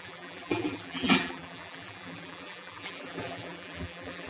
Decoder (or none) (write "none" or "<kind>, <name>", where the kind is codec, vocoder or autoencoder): vocoder, BigVGAN v2